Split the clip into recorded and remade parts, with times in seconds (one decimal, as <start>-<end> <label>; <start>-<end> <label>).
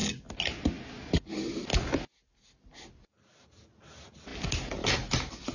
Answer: 0.0-5.5 recorded